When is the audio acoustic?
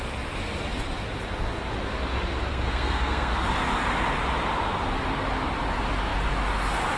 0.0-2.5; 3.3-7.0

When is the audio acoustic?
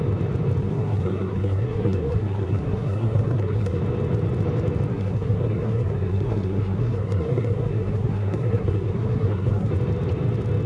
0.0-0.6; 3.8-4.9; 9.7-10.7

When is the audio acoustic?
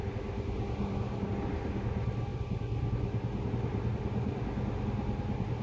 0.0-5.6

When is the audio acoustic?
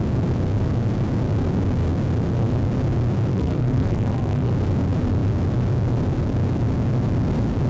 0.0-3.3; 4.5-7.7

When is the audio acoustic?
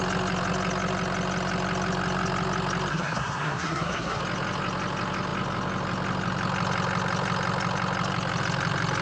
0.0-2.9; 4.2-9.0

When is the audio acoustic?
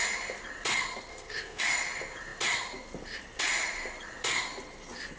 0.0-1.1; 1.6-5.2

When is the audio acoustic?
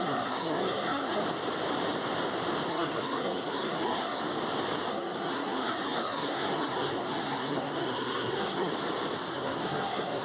1.2-2.7; 4.2-4.9; 8.7-9.3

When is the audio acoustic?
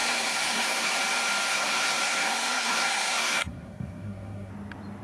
0.9-1.5; 4.5-5.0